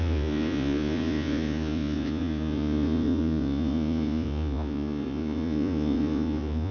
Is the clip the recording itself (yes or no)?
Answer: no